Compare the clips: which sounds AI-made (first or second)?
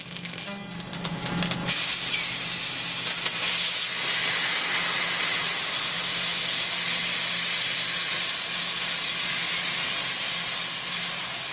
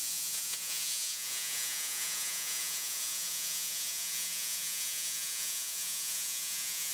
second